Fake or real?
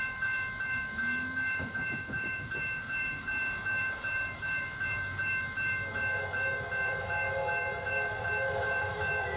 fake